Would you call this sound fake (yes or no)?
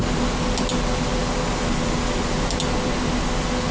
no